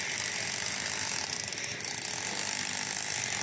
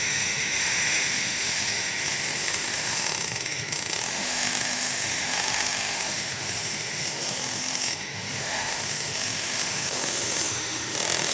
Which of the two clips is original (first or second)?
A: first